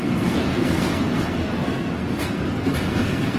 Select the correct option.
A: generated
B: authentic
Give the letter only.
A